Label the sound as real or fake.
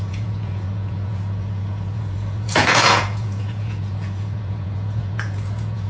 fake